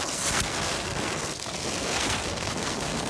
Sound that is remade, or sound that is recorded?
remade